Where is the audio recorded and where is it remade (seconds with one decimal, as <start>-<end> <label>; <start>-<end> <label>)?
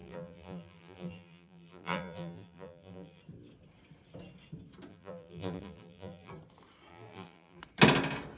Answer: 0.0-3.2 remade; 3.2-4.9 recorded; 4.9-6.3 remade; 6.3-6.9 recorded; 6.9-7.6 remade; 7.6-8.4 recorded